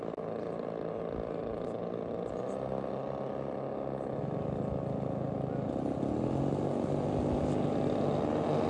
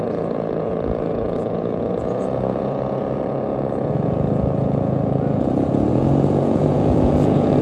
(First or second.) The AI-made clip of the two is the second